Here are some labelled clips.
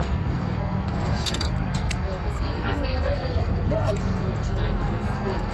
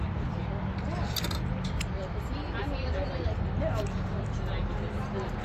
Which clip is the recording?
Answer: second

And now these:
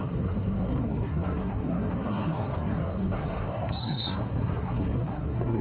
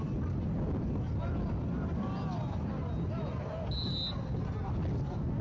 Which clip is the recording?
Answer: second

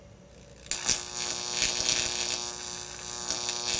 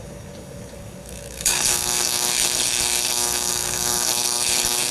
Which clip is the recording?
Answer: first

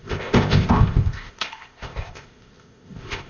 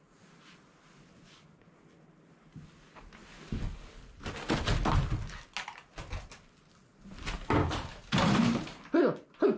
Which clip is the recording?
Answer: second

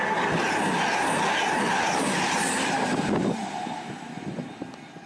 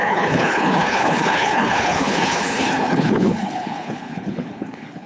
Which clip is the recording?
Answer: first